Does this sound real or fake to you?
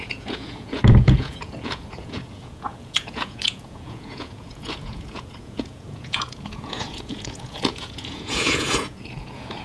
fake